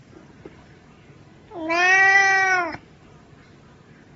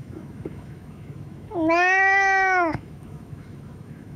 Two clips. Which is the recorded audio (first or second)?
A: first